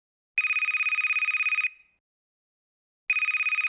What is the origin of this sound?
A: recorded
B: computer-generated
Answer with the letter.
A